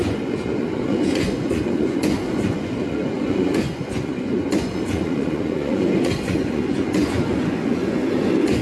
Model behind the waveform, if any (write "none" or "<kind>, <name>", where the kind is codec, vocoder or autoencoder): vocoder, Vocos